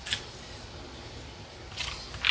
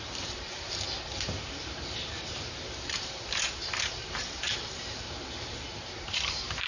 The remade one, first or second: second